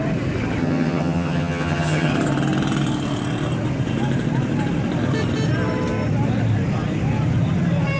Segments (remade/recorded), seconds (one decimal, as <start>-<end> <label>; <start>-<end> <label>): 0.0-0.6 recorded; 0.6-2.1 remade; 2.1-8.0 recorded